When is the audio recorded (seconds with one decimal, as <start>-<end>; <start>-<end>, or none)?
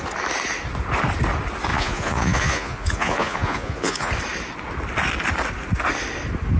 0.0-1.7; 4.1-6.6